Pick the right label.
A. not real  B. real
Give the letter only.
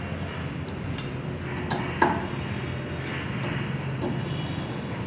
B